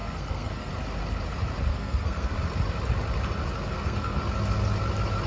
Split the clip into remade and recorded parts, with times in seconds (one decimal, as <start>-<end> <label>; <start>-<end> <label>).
0.0-0.7 remade; 0.7-1.7 recorded; 1.7-2.3 remade; 2.3-3.7 recorded; 3.7-4.2 remade; 4.2-5.3 recorded